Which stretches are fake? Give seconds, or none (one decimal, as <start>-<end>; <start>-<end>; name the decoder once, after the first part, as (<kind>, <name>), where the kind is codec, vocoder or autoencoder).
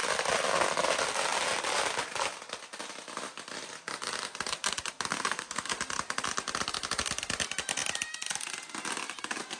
5.1-5.7 (codec, SNAC)